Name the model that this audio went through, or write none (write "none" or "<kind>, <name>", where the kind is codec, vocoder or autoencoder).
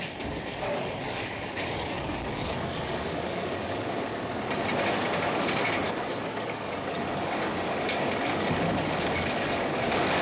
codec, DAC